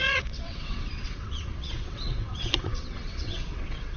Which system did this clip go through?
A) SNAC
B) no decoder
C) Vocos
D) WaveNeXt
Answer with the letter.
D